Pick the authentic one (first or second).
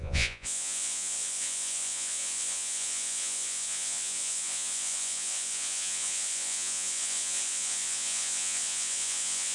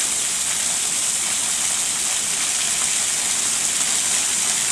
second